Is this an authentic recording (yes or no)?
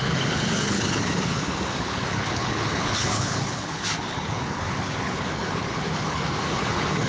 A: no